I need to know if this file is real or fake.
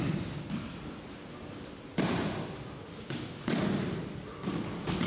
real